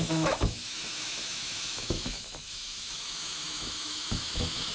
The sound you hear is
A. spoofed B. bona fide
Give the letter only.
A